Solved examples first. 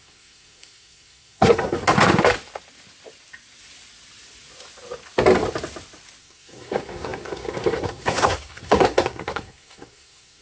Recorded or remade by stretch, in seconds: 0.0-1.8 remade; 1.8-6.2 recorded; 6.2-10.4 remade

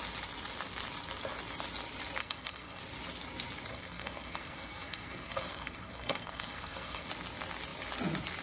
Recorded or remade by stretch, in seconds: 0.0-2.2 recorded; 2.2-2.8 remade; 2.8-3.7 recorded; 3.7-7.1 remade; 7.1-8.4 recorded

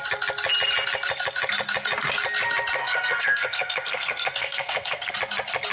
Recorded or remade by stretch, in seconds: 0.0-2.8 recorded; 2.8-5.1 remade; 5.1-5.7 recorded

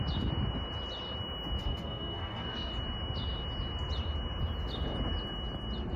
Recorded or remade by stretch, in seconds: 0.0-1.6 recorded; 1.6-2.7 remade; 2.7-6.0 recorded

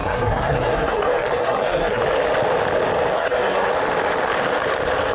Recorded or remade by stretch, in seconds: 0.0-2.0 remade; 2.0-3.1 recorded; 3.1-3.7 remade; 3.7-5.1 recorded